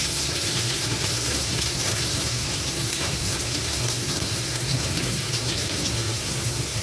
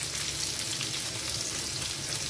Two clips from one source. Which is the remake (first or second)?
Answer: first